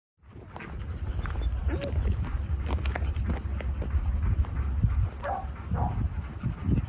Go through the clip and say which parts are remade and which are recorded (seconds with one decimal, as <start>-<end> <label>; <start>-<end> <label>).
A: 0.0-6.9 recorded